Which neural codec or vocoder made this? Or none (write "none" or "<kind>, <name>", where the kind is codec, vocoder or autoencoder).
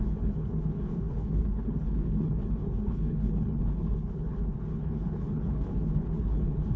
codec, HILCodec